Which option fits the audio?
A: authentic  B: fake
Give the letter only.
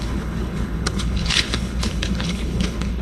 B